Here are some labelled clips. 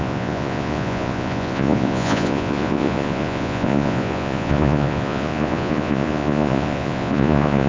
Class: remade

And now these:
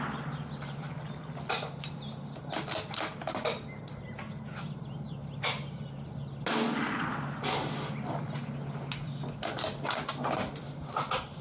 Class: recorded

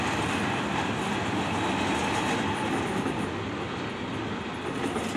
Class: recorded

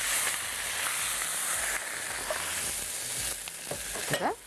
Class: recorded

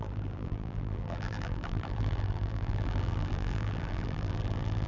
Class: remade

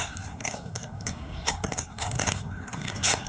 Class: remade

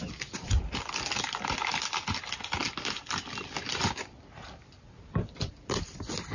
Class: recorded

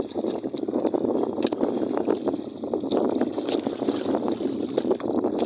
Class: recorded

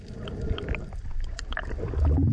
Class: recorded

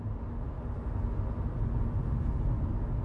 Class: recorded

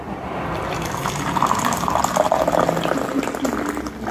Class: recorded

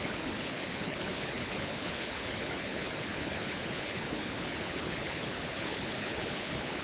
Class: remade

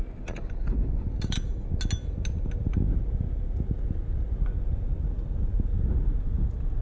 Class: recorded